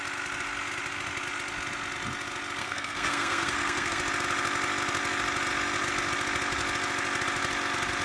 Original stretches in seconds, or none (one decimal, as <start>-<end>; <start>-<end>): 0.0-2.6; 4.0-8.0